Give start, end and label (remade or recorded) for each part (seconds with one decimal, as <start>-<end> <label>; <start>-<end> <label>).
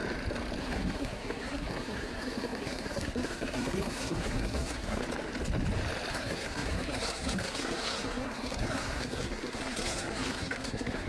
0.0-0.6 recorded; 0.6-5.0 remade; 5.0-6.1 recorded; 6.1-11.1 remade